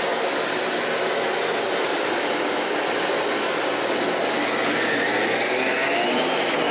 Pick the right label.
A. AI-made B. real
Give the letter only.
B